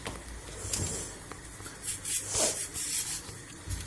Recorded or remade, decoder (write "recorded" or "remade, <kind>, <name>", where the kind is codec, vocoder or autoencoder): recorded